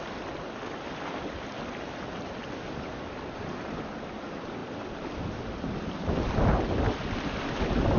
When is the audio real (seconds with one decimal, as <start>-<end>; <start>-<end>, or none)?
0.0-8.0

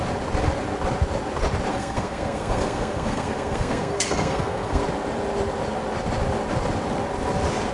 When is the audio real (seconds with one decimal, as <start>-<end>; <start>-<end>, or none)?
0.0-1.7; 4.8-7.7

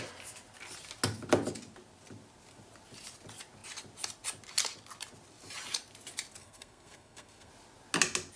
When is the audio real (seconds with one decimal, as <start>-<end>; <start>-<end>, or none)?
0.0-6.4; 7.5-8.4